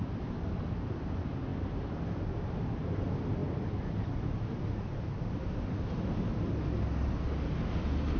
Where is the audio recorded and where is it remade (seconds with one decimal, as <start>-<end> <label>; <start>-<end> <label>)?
0.0-8.2 recorded